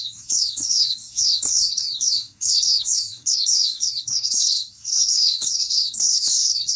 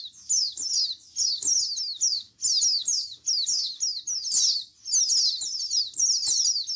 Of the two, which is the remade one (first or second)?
first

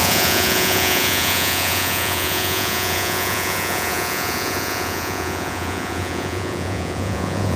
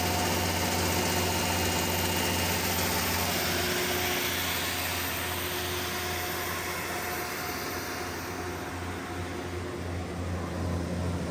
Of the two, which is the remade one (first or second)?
first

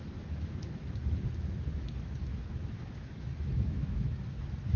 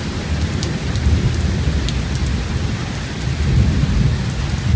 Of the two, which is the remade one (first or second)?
first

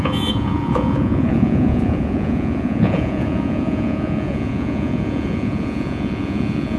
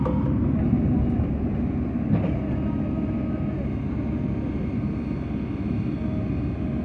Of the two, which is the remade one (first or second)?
first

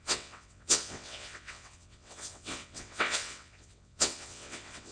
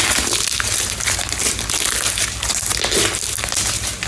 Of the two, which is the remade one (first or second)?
first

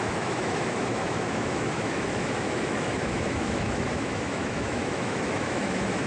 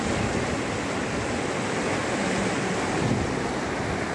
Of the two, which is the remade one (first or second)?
first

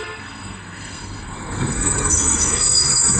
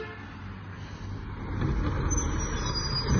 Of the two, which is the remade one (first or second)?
first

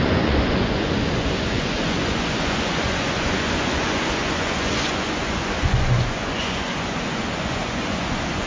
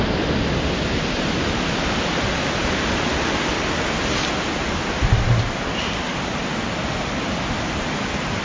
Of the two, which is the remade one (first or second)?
first